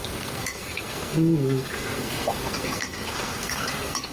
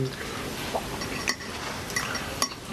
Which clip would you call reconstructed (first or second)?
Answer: first